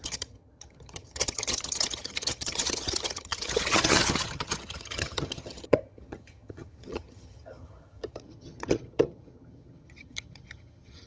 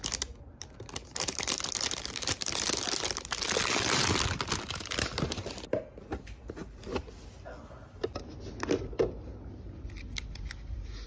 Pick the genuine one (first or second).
second